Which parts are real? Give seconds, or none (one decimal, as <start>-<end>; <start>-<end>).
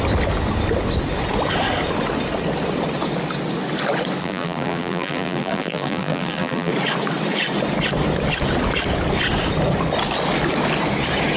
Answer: 0.0-4.2; 6.7-11.4